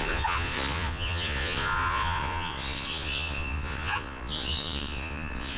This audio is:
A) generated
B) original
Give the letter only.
A